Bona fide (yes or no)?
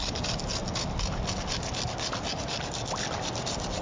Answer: yes